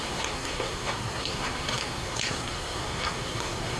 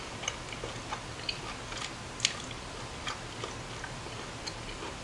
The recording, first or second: second